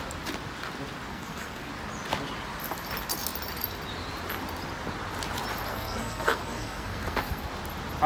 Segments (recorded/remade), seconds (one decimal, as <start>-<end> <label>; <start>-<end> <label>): 0.0-1.1 recorded; 1.1-1.7 remade; 1.7-5.7 recorded; 5.7-7.5 remade; 7.5-8.1 recorded